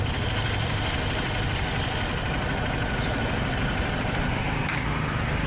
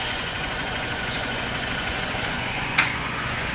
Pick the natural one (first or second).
first